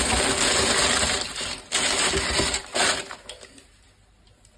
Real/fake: real